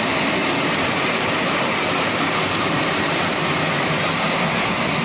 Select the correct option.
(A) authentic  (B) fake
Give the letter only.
B